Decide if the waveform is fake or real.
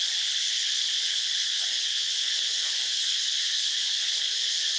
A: fake